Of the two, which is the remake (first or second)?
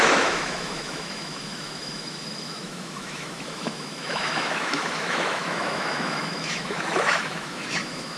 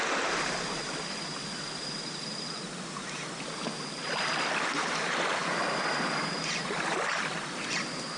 first